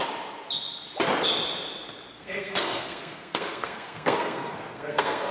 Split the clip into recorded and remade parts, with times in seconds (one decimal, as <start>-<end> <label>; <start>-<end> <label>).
0.0-2.1 recorded; 2.1-5.3 remade